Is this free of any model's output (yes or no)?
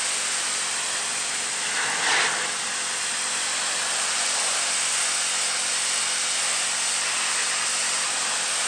yes